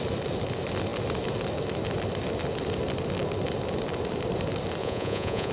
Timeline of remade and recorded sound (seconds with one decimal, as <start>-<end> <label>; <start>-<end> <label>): 0.0-4.8 recorded; 4.8-5.5 remade